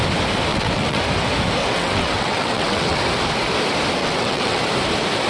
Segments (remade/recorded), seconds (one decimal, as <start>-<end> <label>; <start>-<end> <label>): 0.0-0.5 recorded; 0.5-1.0 remade; 1.0-1.6 recorded; 1.6-3.0 remade; 3.0-4.0 recorded; 4.0-4.6 remade; 4.6-5.3 recorded

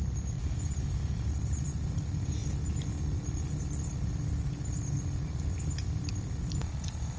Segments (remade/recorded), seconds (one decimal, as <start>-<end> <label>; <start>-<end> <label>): 0.0-7.2 recorded

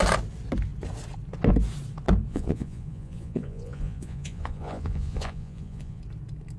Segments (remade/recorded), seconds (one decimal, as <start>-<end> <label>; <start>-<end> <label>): 0.0-2.3 recorded; 2.3-6.0 remade; 6.0-6.6 recorded

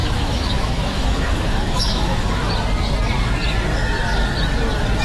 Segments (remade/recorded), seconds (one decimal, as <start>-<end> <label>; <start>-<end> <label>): 0.0-2.5 remade; 2.5-5.0 recorded

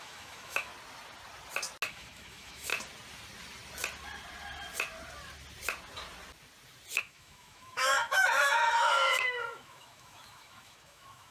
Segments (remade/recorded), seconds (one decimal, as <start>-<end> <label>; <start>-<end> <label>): 0.0-0.7 remade; 0.7-1.9 recorded; 1.9-2.7 remade; 2.7-7.0 recorded; 7.0-11.3 remade